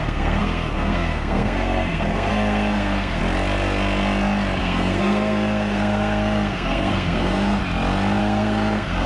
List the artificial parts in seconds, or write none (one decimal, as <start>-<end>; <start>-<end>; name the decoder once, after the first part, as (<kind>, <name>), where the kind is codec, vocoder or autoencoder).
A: 0.0-3.2 (codec, SNAC); 4.6-7.6; 8.2-9.1

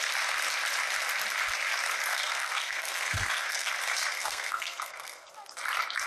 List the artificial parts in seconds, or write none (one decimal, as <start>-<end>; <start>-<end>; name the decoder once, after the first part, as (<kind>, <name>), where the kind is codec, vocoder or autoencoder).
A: 2.1-3.7 (codec, SNAC); 4.2-5.3